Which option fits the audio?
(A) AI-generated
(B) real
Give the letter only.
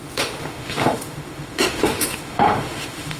A